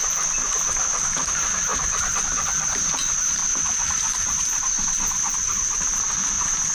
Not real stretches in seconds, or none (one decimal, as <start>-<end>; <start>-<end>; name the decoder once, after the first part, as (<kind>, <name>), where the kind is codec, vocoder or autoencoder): none